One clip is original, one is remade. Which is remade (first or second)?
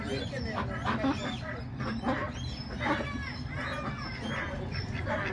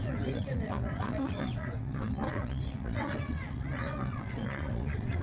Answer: second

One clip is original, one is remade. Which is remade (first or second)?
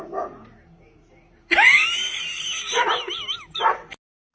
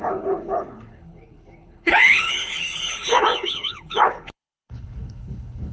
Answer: second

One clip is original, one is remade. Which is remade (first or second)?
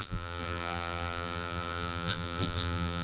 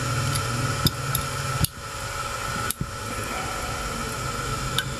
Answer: first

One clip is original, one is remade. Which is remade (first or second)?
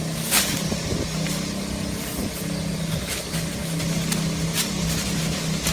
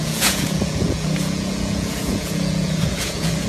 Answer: second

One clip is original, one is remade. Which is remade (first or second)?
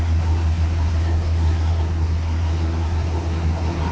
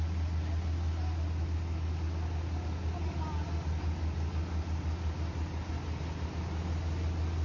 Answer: first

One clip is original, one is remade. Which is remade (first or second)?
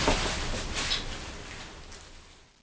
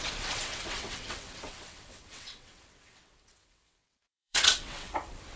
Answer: second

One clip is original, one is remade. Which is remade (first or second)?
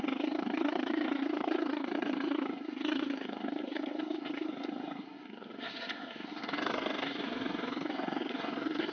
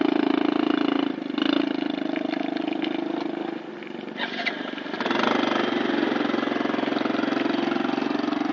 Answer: first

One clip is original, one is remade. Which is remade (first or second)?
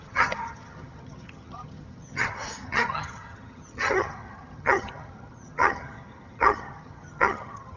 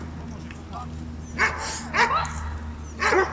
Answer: first